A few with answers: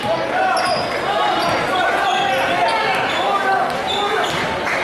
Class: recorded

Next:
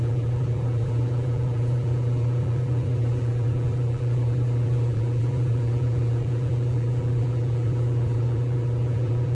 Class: remade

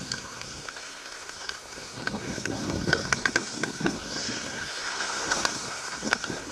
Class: remade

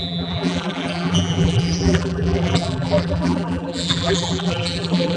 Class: remade